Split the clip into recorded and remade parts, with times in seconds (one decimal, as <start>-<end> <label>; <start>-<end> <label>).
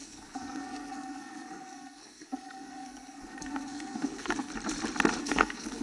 0.0-4.5 remade; 4.5-5.2 recorded; 5.2-5.8 remade